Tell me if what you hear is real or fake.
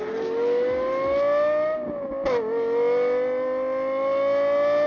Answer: real